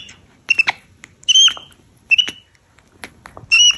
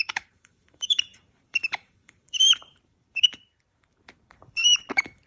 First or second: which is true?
first